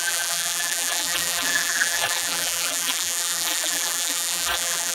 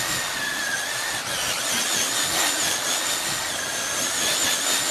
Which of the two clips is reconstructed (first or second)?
first